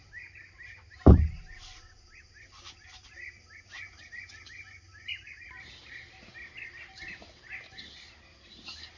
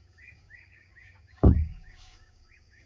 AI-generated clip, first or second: second